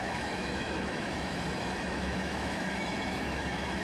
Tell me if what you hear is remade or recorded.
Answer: remade